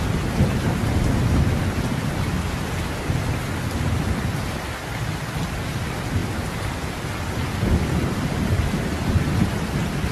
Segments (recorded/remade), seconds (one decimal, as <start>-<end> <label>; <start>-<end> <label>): 0.0-10.1 recorded

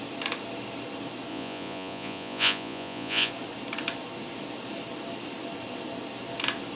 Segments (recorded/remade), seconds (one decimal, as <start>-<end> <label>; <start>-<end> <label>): 0.0-1.3 recorded; 1.3-3.3 remade; 3.3-6.8 recorded